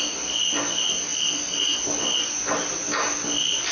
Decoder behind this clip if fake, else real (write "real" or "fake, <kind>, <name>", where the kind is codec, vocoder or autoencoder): fake, vocoder, BigVGAN v2